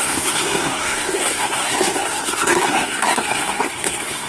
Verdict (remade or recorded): remade